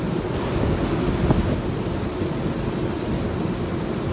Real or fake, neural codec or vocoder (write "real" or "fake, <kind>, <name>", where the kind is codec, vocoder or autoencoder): real